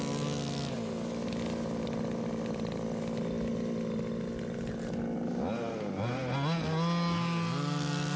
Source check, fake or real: real